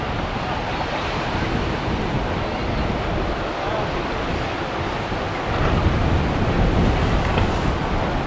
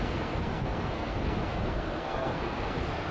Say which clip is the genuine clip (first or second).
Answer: first